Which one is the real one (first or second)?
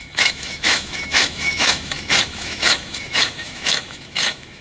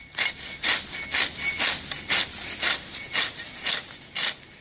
second